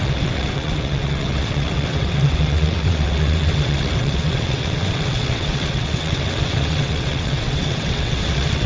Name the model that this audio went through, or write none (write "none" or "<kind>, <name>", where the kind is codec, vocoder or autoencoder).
vocoder, WaveNeXt